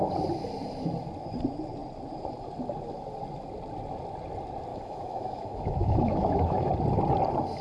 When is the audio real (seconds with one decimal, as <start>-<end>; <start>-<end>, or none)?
0.0-4.7; 6.7-7.6